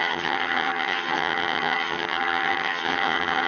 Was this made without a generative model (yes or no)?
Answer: no